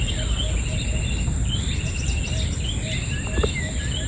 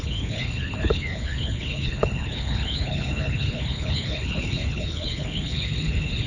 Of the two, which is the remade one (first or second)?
second